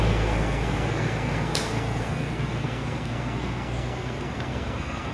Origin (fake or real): fake